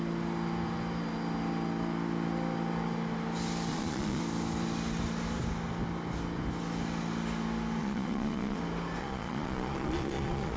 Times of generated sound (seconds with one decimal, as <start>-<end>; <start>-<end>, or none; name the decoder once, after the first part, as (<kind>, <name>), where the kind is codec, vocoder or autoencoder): 3.7-4.2 (vocoder, Vocos); 7.8-8.6; 9.0-10.6